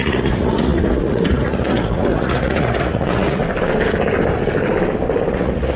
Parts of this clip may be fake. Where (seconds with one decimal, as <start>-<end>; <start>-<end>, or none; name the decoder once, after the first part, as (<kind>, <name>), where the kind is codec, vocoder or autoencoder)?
0.0-3.4 (vocoder, Vocos); 5.3-5.8